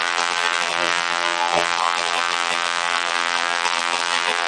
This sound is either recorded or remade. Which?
remade